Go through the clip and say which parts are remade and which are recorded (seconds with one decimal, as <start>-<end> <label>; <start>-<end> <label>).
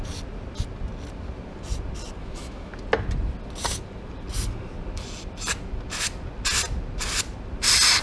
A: 0.0-2.2 recorded; 2.2-2.7 remade; 2.7-8.0 recorded